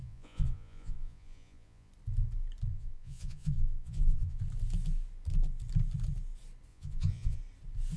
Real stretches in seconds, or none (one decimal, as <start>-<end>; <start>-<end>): 1.9-2.7; 4.4-6.7; 7.4-8.0